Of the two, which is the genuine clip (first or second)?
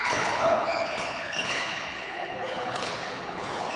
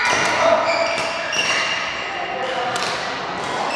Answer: second